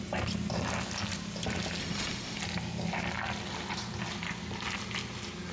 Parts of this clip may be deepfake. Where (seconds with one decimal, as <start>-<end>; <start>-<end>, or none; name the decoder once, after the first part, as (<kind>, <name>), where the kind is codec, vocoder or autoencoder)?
1.8-2.4 (autoencoder, DAC-VAE)